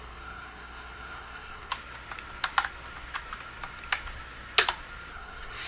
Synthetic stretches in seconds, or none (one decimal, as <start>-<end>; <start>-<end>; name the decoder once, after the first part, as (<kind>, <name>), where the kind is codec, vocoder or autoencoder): 0.0-1.7 (codec, SNAC); 5.1-5.7